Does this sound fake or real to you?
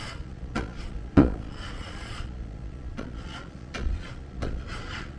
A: fake